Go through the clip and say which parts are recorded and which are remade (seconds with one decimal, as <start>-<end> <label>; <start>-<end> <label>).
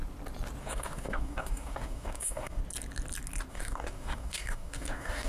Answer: 0.0-0.6 recorded; 0.6-2.6 remade; 2.6-3.5 recorded; 3.5-5.3 remade